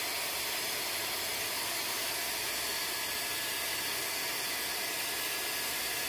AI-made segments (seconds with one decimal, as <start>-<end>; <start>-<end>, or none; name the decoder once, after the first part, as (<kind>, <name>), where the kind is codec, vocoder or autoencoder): none